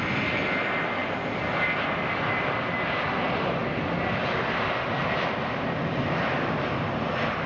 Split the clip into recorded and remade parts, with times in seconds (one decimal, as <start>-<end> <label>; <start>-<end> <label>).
0.0-7.5 recorded